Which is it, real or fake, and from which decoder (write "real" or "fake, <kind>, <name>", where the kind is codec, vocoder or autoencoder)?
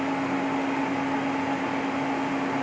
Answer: real